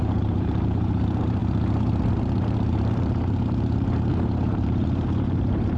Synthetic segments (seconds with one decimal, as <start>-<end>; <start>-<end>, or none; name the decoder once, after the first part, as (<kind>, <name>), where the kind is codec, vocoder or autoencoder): 0.0-1.4 (vocoder, BigVGAN v2); 2.1-5.8